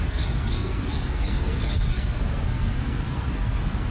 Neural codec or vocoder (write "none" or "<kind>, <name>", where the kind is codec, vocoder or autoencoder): codec, SNAC